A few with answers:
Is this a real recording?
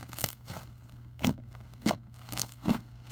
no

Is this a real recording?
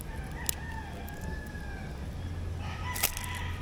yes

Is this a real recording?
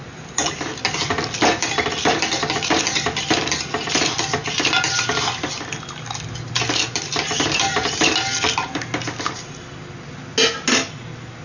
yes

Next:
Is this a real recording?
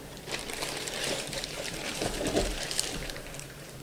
no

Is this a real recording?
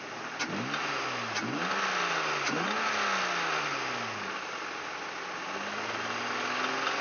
yes